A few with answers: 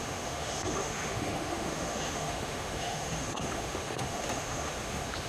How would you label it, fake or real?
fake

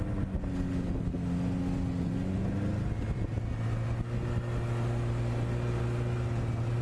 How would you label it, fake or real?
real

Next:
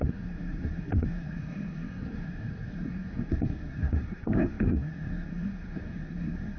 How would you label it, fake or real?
fake